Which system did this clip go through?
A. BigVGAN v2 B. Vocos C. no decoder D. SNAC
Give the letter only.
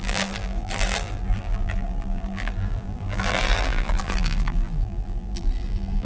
A